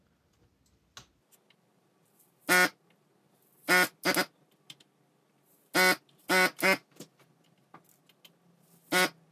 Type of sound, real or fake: real